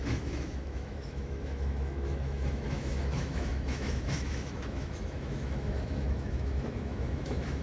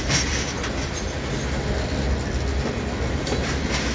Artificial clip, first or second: first